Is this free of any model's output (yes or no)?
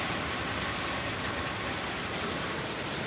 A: yes